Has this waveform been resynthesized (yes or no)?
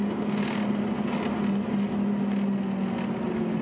no